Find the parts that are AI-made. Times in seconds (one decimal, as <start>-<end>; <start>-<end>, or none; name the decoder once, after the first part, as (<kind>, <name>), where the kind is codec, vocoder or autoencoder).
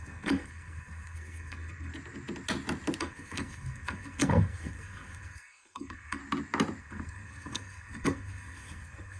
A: 0.0-1.9 (codec, SNAC); 3.0-6.2; 6.8-9.2